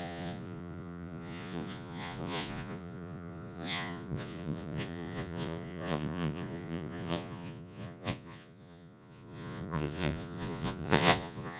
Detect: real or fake fake